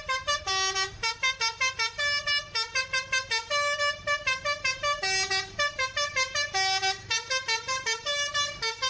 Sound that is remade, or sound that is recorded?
recorded